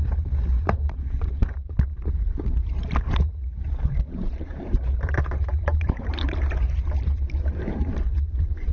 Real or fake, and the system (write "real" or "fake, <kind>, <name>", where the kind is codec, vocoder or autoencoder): fake, vocoder, BigVGAN v2